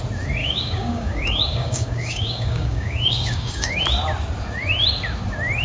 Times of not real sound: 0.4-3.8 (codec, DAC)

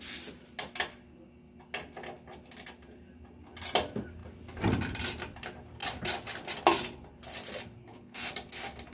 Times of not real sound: 7.8-8.3 (codec, SNAC)

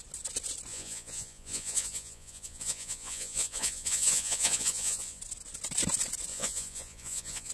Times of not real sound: 0.7-5.2 (vocoder, Vocos); 6.3-7.5

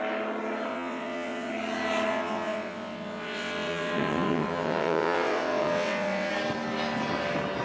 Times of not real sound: 0.7-1.5 (vocoder, WaveNeXt); 2.1-6.3

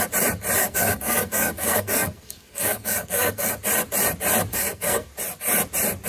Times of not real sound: 0.6-3.5 (codec, SNAC); 4.5-5.1